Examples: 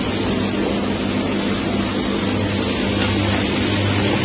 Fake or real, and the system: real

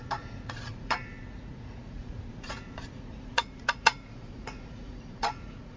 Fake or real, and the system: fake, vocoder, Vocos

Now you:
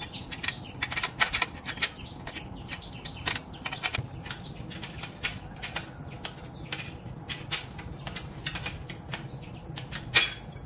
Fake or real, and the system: real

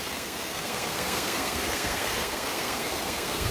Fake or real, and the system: fake, codec, SNAC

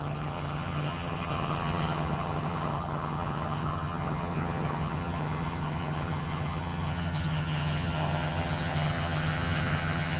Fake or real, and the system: fake, vocoder, HiFi-GAN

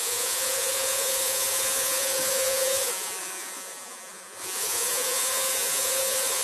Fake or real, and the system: fake, vocoder, Vocos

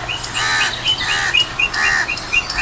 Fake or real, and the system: real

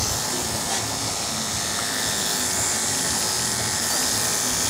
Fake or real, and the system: real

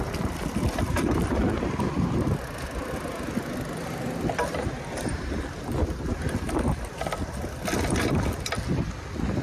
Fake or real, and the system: real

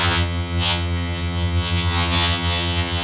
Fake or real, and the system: fake, vocoder, HiFi-GAN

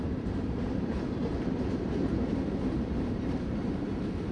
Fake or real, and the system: fake, vocoder, BigVGAN v2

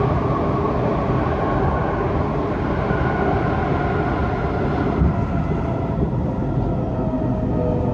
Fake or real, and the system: real